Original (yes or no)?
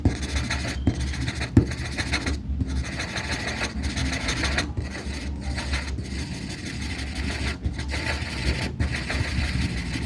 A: yes